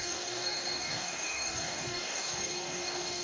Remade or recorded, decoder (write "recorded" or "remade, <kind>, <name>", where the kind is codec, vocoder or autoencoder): remade, codec, DAC